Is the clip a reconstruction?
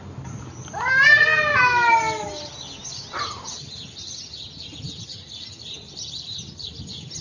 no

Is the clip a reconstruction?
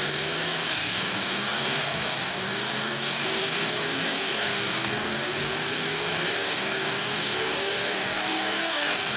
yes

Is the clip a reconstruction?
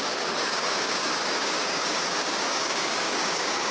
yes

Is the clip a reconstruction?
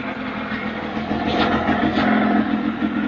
no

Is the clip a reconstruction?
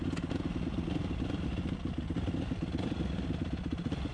no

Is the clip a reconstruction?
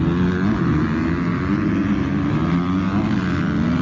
no